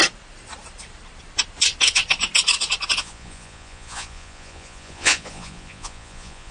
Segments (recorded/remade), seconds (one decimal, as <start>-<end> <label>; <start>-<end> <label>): 0.0-3.0 recorded; 3.0-6.5 remade